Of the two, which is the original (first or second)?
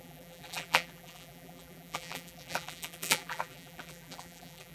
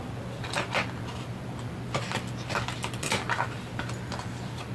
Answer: second